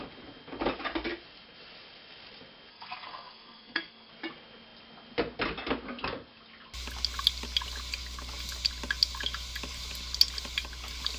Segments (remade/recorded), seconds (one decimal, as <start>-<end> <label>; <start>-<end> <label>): 0.0-2.7 recorded; 2.7-4.1 remade; 4.1-11.2 recorded

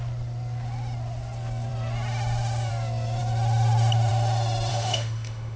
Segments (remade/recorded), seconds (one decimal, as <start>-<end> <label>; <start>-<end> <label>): 0.0-4.7 recorded; 4.7-5.6 remade

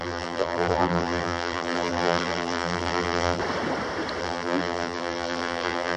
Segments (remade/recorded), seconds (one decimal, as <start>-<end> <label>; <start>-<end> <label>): 0.0-3.4 remade; 3.4-4.2 recorded; 4.2-6.0 remade

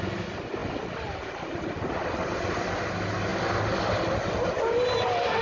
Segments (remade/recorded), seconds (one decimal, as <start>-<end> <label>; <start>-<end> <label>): 0.0-0.6 recorded; 0.6-1.9 remade; 1.9-5.4 recorded

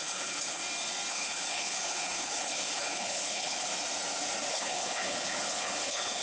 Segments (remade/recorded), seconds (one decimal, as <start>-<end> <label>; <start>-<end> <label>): 0.0-0.6 remade; 0.6-1.1 recorded; 1.1-3.7 remade; 3.7-4.5 recorded; 4.5-6.2 remade

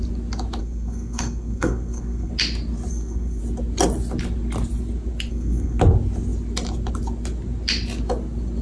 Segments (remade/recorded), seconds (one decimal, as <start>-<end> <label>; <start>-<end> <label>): 0.0-0.6 recorded; 0.6-2.3 remade; 2.3-2.9 recorded; 2.9-3.4 remade; 3.4-5.3 recorded; 5.3-5.8 remade; 5.8-8.6 recorded

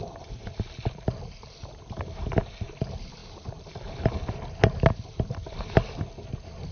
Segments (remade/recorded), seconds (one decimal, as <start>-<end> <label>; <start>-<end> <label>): 0.0-6.7 recorded

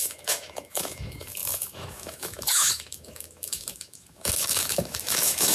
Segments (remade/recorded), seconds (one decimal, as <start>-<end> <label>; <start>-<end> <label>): 0.0-5.5 remade